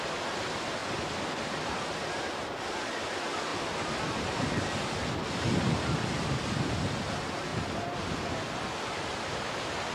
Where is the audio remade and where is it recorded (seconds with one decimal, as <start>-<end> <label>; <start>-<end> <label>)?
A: 0.0-0.8 recorded; 0.8-2.2 remade; 2.2-7.5 recorded; 7.5-9.4 remade; 9.4-9.9 recorded